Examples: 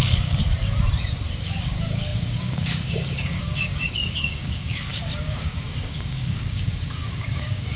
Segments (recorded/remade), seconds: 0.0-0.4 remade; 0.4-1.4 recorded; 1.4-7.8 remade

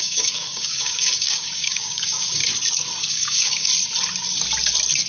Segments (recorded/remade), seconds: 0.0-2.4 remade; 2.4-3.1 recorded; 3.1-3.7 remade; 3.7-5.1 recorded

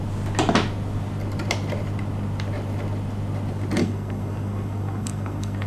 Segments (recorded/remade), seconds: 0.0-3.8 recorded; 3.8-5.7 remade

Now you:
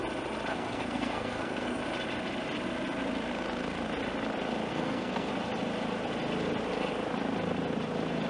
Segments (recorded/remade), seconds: 0.0-0.5 recorded; 0.5-1.8 remade; 1.8-4.7 recorded; 4.7-5.3 remade; 5.3-8.3 recorded

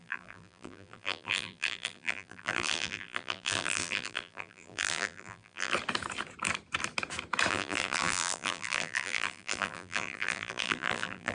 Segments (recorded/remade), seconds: 0.0-5.7 remade; 5.7-7.5 recorded; 7.5-11.3 remade

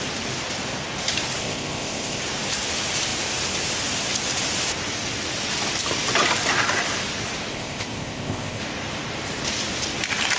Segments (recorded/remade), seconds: 0.0-1.4 recorded; 1.4-2.2 remade; 2.2-7.5 recorded; 7.5-8.6 remade; 8.6-10.4 recorded

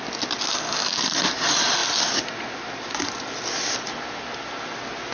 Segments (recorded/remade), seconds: 0.0-5.1 recorded

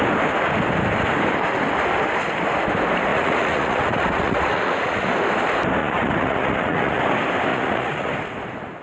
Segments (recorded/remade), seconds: 0.0-3.1 recorded; 3.1-5.1 remade; 5.1-5.8 recorded; 5.8-7.0 remade; 7.0-7.5 recorded; 7.5-8.1 remade; 8.1-8.8 recorded